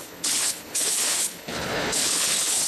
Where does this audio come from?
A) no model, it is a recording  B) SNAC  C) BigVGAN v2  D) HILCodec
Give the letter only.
D